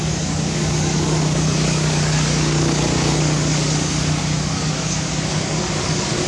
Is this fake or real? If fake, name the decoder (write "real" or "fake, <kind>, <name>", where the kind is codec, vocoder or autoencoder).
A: fake, codec, DAC